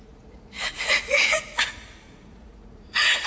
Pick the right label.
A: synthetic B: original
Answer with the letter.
A